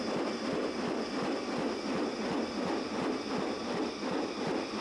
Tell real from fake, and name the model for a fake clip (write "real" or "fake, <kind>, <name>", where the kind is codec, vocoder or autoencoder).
real